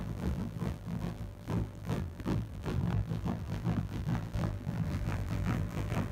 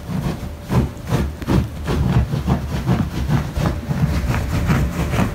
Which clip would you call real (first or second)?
second